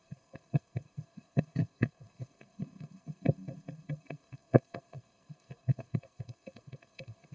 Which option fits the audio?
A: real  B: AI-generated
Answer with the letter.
B